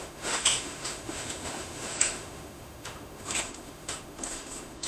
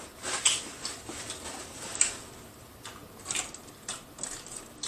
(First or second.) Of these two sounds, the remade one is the first